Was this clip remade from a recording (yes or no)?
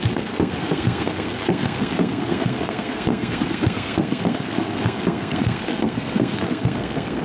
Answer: yes